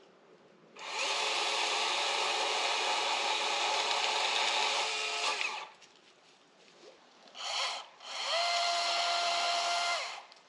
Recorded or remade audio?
recorded